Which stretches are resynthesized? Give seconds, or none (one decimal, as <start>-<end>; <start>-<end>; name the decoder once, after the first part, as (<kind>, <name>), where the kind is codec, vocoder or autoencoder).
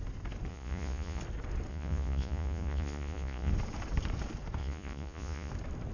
0.5-1.2 (vocoder, Vocos); 1.7-3.5; 4.6-5.5